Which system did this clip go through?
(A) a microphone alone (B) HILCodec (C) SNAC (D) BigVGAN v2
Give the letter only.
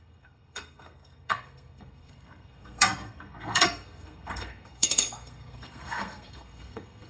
C